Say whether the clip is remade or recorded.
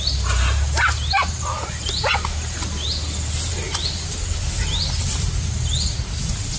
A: recorded